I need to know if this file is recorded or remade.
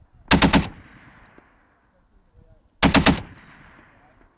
recorded